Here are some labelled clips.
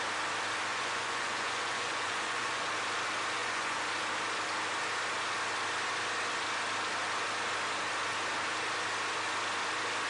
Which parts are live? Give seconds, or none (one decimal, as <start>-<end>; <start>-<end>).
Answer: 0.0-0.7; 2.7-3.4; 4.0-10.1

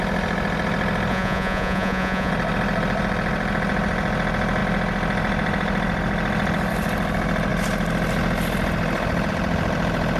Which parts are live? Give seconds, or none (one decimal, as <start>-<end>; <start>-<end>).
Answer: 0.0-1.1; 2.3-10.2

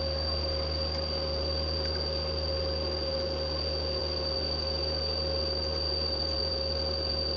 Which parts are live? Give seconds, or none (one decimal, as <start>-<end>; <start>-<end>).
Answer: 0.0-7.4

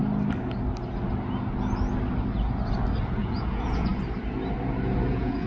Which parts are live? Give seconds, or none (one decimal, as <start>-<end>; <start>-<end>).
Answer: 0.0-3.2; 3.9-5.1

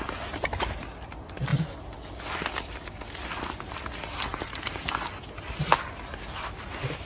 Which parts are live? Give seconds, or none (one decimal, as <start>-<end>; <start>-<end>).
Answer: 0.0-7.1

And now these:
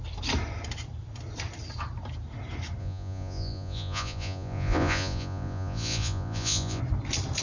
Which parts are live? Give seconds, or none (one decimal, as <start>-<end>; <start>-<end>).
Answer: 0.0-2.8; 6.8-7.4

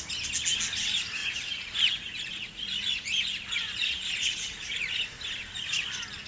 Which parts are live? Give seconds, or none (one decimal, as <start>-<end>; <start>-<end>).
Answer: 0.0-1.2; 4.9-6.3